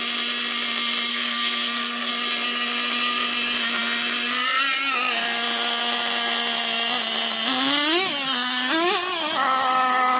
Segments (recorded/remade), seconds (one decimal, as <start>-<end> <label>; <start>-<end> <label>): 0.0-1.1 recorded; 1.1-2.1 remade; 2.1-10.2 recorded